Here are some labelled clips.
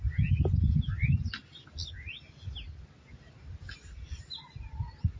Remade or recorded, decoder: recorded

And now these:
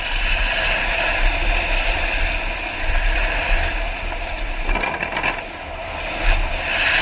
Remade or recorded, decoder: recorded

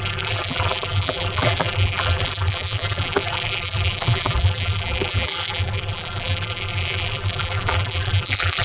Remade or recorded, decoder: remade, vocoder, BigVGAN v2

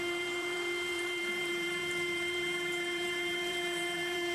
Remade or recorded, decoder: remade, vocoder, BigVGAN v2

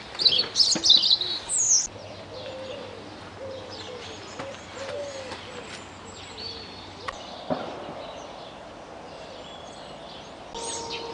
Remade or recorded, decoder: recorded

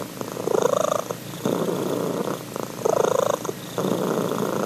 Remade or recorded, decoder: recorded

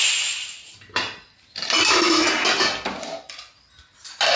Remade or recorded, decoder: recorded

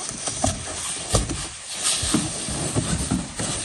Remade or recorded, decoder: recorded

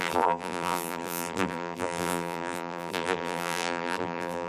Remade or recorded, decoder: remade, vocoder, BigVGAN v2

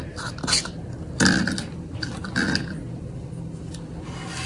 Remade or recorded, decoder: recorded